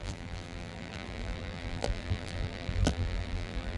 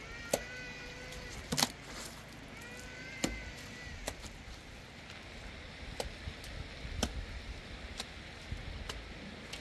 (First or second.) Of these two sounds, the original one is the second